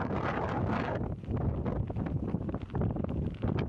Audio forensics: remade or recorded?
recorded